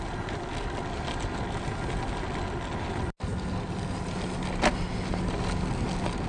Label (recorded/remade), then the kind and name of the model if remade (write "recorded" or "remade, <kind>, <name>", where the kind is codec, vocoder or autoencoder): recorded